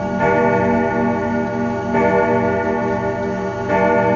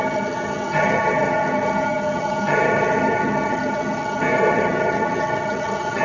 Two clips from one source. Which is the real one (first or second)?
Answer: first